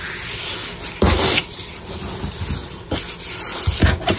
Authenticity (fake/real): real